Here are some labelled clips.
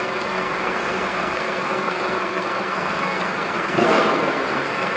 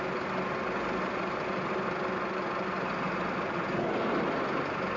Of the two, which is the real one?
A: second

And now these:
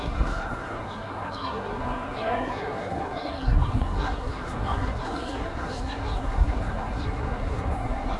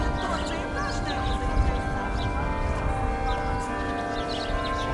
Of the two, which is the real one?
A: second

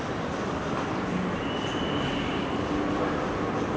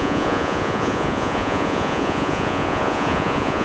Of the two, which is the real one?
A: first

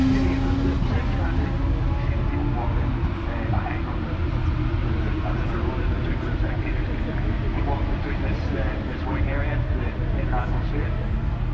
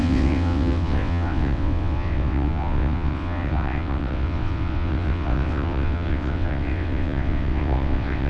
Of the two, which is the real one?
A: first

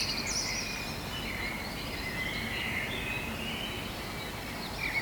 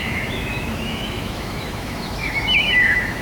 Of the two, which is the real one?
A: first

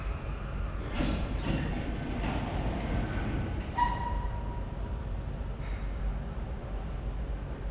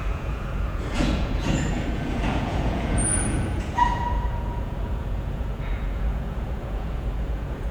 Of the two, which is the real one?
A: first